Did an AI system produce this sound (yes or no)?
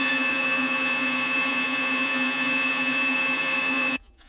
yes